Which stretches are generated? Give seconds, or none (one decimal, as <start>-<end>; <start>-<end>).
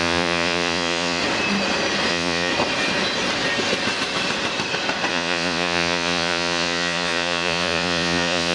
0.0-1.2; 2.1-2.5; 5.1-8.5